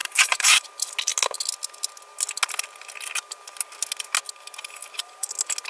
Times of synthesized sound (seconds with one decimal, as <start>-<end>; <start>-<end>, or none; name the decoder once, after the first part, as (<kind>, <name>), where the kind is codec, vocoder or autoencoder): 0.0-0.7 (vocoder, BigVGAN v2); 4.8-5.3